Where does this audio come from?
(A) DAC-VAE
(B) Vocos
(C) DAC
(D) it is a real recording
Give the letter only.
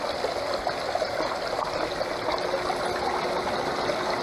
D